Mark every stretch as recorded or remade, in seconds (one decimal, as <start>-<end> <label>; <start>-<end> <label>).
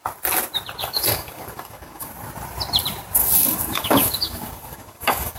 0.0-0.8 recorded; 0.8-2.1 remade; 2.1-3.2 recorded; 3.2-5.4 remade